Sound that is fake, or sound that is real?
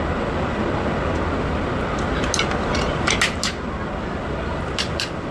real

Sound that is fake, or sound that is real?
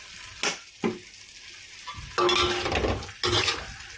real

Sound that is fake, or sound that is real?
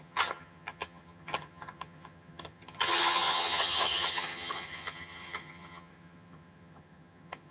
fake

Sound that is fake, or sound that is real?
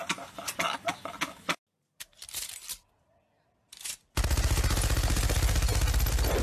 real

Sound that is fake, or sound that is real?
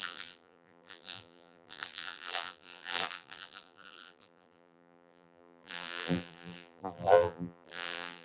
fake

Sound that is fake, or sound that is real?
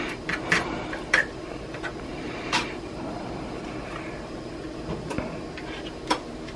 fake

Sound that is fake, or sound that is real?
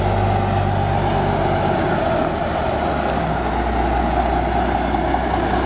real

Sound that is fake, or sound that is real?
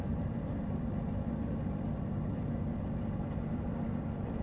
real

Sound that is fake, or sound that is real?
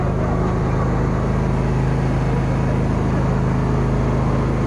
real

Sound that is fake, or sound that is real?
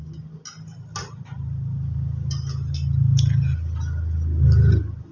real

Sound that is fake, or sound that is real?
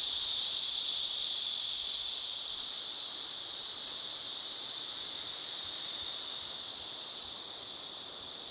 fake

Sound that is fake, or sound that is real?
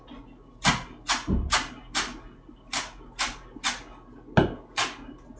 real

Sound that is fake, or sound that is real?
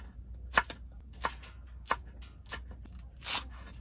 real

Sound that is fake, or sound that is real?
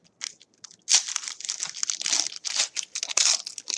real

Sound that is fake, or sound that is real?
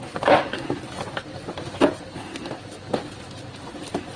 real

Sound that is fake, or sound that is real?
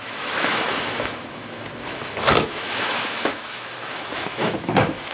fake